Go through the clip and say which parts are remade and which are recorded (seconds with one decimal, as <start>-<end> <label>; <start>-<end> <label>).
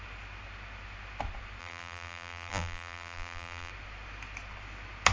0.0-1.6 recorded; 1.6-3.7 remade; 3.7-5.1 recorded